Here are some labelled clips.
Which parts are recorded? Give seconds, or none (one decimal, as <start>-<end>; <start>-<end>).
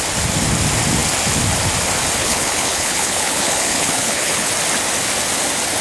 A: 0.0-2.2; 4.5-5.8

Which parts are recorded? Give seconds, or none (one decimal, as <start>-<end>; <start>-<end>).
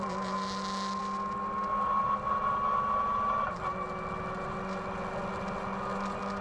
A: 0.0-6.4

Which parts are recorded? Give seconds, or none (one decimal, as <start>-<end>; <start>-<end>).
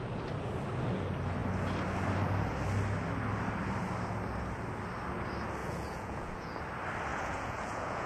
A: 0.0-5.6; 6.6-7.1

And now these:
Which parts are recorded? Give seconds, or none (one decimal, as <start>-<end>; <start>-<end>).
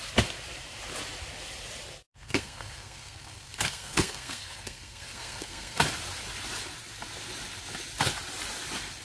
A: 0.0-2.1; 5.8-9.0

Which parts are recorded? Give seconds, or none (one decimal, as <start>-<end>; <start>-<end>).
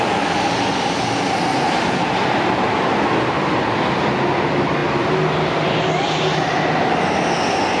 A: 0.0-7.8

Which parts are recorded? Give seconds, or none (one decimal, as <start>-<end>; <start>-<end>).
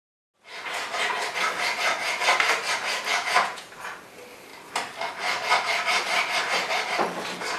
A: 0.0-3.1; 3.7-7.6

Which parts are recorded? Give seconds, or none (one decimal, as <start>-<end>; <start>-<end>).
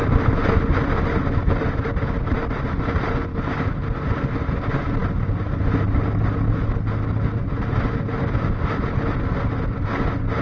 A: 0.0-10.4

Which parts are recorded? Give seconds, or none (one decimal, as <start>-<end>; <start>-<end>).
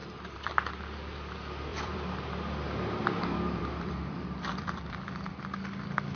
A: 0.5-1.7; 5.4-6.2